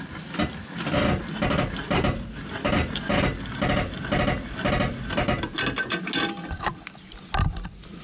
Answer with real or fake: real